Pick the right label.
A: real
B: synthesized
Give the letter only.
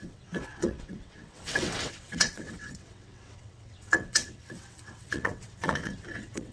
B